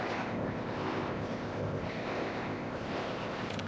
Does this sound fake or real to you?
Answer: fake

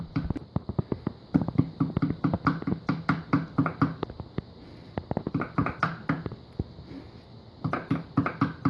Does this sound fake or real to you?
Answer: real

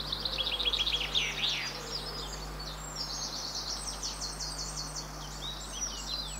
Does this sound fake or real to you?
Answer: real